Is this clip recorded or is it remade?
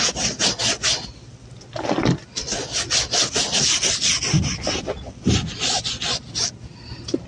recorded